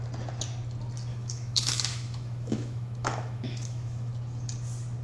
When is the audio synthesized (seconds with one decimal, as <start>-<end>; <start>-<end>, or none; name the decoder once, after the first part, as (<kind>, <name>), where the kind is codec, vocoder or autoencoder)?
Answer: 1.1-4.1 (autoencoder, DAC-VAE)